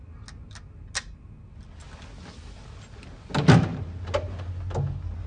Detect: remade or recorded recorded